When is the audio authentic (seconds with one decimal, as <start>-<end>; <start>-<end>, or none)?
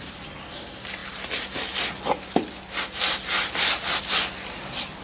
0.0-5.0